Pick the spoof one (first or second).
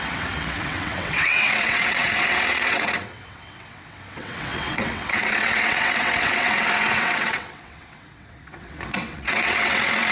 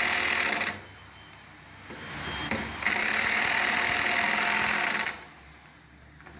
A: first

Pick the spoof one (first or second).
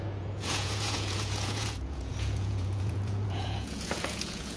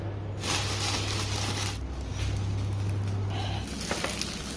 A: first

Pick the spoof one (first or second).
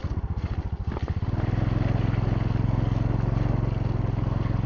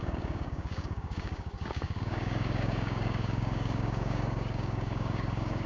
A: second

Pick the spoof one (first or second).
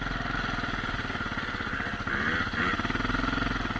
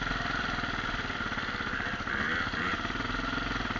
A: second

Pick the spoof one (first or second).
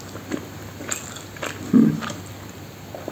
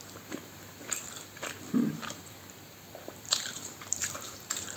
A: second